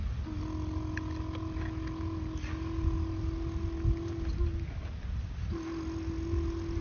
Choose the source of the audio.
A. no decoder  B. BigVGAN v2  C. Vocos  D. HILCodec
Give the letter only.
A